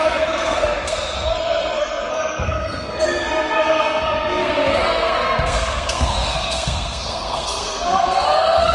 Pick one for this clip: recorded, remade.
remade